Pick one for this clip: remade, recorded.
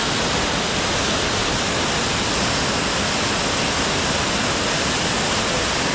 recorded